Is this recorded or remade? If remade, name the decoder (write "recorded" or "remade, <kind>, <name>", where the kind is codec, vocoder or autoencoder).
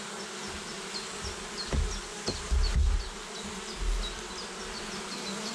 recorded